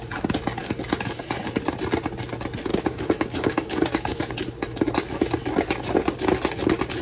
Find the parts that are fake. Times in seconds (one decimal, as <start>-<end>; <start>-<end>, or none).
2.7-4.3